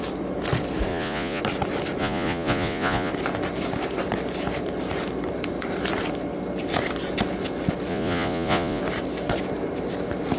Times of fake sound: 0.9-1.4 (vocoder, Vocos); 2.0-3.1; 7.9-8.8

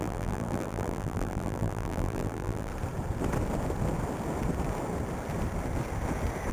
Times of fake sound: 0.0-2.7 (vocoder, BigVGAN v2)

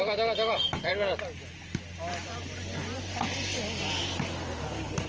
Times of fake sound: none

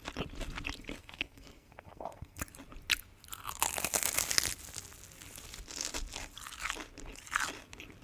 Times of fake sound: 1.0-2.4 (codec, SNAC)

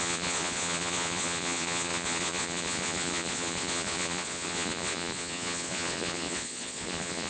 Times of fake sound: 0.0-7.3 (vocoder, Vocos)

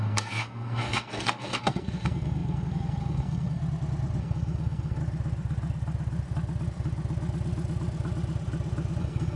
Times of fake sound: 0.0-3.6 (codec, SNAC); 4.2-5.0; 9.0-9.4

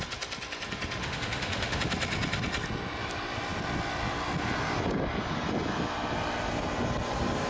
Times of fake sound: 1.0-1.8 (autoencoder, DAC-VAE)

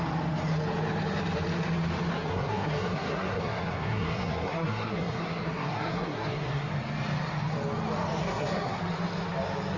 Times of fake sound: 2.1-6.7 (codec, SNAC); 8.2-8.8